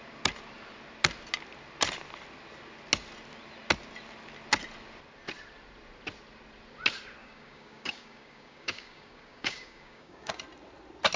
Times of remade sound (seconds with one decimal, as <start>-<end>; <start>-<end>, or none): 7.2-10.4